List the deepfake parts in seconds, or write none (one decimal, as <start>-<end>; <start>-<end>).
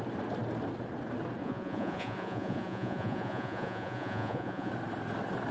1.4-4.7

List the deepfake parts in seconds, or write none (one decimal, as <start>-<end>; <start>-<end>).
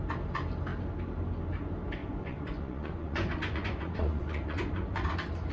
2.0-5.1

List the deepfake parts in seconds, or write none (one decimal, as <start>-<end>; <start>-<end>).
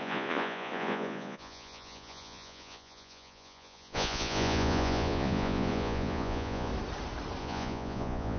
0.0-6.7; 7.4-8.4